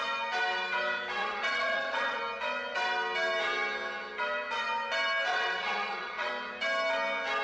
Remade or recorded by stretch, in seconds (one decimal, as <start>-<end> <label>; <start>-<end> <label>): 0.0-1.2 recorded; 1.2-2.2 remade; 2.2-5.3 recorded; 5.3-6.3 remade; 6.3-7.4 recorded